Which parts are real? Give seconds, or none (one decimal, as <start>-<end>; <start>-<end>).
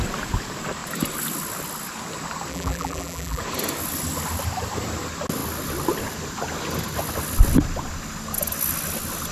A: 0.0-2.5; 3.4-9.3